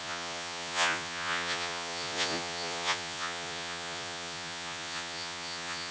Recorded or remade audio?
remade